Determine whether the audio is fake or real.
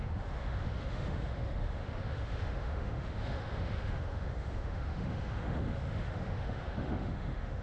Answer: fake